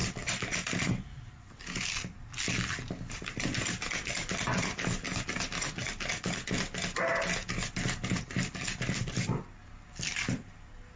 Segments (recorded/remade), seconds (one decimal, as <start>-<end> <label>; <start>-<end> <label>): 0.0-11.0 recorded